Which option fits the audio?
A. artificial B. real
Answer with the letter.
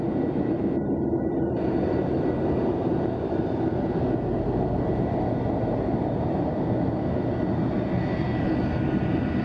B